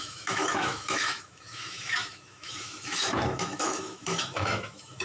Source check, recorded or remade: remade